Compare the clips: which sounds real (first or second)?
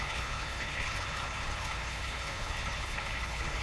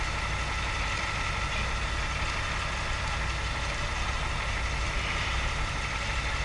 second